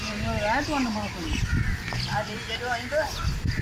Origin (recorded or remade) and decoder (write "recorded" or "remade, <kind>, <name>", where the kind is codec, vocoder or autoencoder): recorded